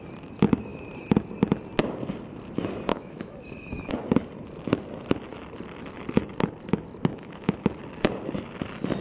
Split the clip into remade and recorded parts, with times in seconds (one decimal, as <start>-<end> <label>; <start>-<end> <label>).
0.0-2.9 recorded; 2.9-3.9 remade; 3.9-7.1 recorded; 7.1-7.8 remade; 7.8-9.0 recorded